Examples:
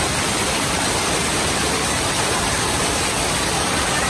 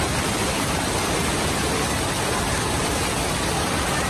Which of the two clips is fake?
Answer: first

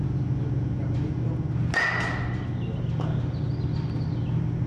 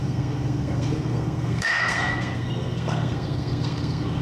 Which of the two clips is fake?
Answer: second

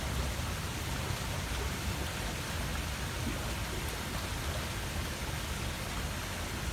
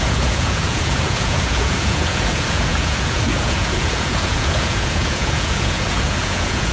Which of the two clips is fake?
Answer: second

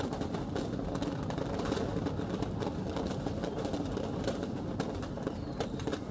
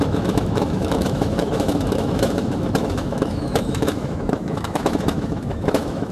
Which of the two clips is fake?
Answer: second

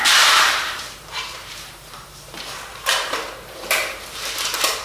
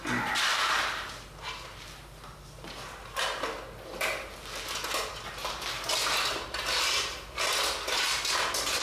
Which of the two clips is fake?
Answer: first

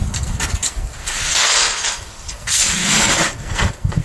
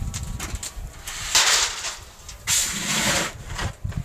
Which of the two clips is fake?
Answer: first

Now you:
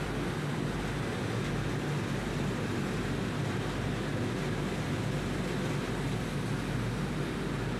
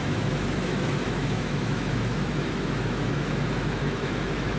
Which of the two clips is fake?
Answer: second